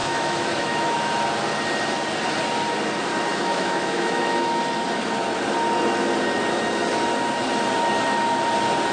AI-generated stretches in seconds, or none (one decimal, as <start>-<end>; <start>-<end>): 0.0-1.0; 3.3-4.6